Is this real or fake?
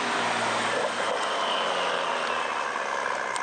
real